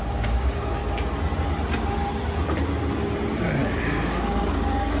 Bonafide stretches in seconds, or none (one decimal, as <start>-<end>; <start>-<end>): 0.8-3.8